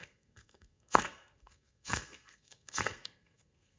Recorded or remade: remade